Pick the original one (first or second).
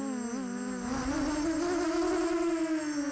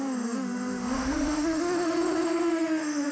first